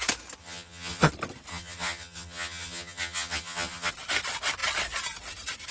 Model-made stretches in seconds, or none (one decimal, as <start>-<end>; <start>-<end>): 0.4-1.1; 1.5-3.9